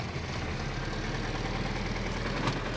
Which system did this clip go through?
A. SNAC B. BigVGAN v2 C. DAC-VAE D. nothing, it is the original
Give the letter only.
D